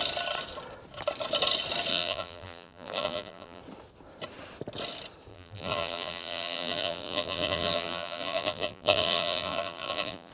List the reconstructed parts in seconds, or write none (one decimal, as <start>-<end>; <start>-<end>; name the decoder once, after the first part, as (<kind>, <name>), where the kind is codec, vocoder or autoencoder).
1.9-3.6 (vocoder, BigVGAN v2); 5.3-10.3